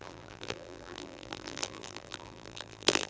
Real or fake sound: fake